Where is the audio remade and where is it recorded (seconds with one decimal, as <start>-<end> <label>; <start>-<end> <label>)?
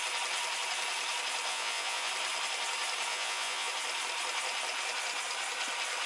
0.0-1.5 recorded; 1.5-2.1 remade; 2.1-3.1 recorded; 3.1-3.7 remade; 3.7-6.1 recorded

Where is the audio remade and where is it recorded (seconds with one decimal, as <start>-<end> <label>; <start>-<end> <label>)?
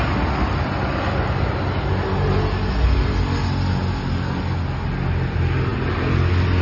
0.0-6.6 recorded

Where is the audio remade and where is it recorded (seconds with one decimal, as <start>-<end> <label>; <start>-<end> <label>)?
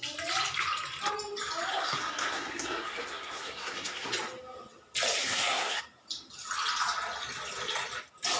0.0-1.7 recorded; 1.7-4.1 remade; 4.1-5.2 recorded; 5.2-5.8 remade; 5.8-8.4 recorded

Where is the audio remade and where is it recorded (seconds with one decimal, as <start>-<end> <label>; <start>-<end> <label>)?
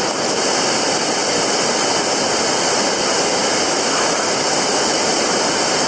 0.0-3.3 recorded; 3.3-5.1 remade; 5.1-5.9 recorded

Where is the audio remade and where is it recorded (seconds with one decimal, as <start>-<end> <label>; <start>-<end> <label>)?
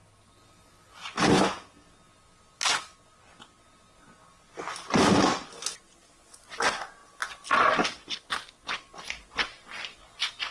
0.0-10.5 recorded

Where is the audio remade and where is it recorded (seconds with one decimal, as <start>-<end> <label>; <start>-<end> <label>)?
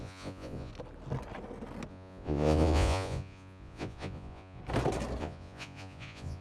0.0-0.7 remade; 0.7-1.9 recorded; 1.9-4.6 remade; 4.6-5.2 recorded; 5.2-6.4 remade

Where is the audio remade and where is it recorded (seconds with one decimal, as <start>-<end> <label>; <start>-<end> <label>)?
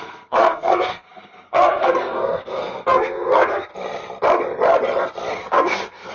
0.0-3.7 remade; 3.7-5.3 recorded; 5.3-6.1 remade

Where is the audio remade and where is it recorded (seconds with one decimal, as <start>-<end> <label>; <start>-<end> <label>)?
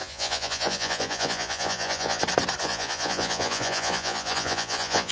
0.0-2.2 remade; 2.2-2.6 recorded; 2.6-5.1 remade